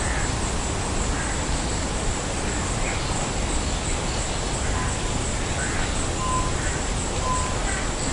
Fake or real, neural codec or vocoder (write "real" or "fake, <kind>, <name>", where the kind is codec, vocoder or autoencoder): real